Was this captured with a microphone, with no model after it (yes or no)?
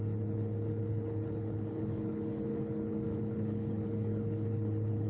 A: no